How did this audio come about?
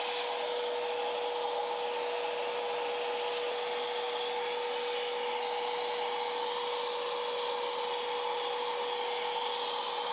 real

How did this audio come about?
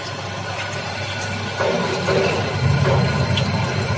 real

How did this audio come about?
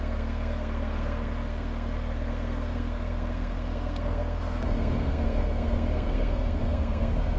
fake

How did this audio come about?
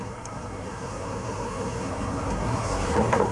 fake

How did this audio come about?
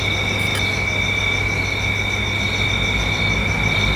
real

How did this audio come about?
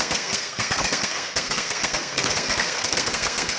fake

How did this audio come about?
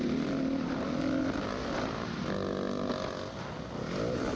real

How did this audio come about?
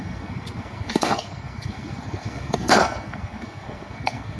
fake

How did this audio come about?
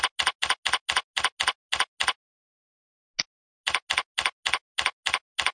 real